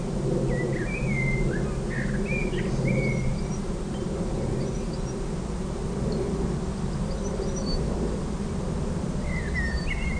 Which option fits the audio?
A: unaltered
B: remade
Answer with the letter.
A